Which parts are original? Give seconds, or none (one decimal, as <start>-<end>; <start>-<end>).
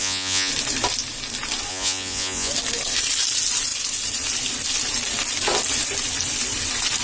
0.5-1.7; 2.5-7.0